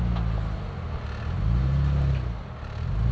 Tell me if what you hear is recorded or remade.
recorded